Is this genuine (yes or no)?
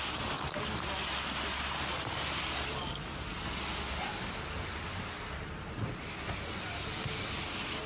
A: yes